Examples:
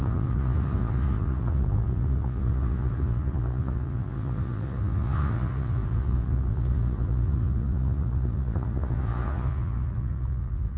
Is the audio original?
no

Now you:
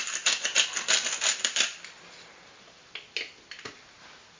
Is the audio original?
yes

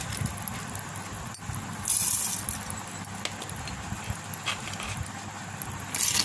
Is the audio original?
yes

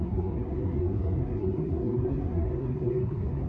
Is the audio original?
no